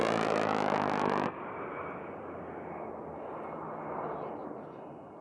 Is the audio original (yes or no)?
yes